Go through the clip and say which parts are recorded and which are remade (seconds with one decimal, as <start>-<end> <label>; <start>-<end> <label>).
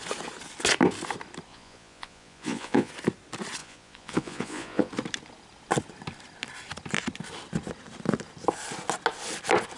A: 0.0-1.5 recorded; 1.5-2.9 remade; 2.9-3.6 recorded; 3.6-4.9 remade; 4.9-9.8 recorded